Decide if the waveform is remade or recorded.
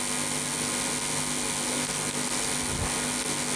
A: recorded